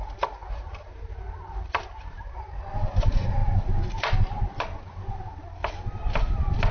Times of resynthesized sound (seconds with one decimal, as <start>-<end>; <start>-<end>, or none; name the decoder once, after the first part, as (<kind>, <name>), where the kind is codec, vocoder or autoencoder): 0.4-2.2 (vocoder, BigVGAN v2)

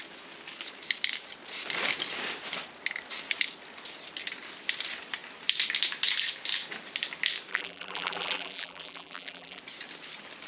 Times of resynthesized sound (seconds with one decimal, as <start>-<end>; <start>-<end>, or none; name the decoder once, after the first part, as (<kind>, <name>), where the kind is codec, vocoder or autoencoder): 7.5-9.6 (vocoder, BigVGAN v2)

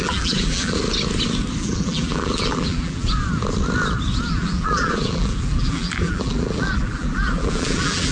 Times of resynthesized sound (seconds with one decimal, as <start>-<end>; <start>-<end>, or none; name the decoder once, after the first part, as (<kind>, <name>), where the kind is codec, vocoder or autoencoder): 0.0-0.8 (vocoder, BigVGAN v2); 1.6-3.2; 4.3-8.1

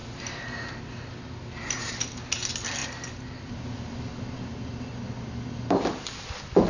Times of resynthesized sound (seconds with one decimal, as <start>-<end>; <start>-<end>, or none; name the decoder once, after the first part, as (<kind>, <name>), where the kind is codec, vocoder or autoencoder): none

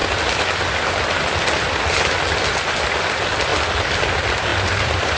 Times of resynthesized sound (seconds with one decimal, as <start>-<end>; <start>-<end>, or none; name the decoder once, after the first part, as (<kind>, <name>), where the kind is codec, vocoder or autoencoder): 3.5-4.0 (vocoder, BigVGAN v2); 4.5-5.2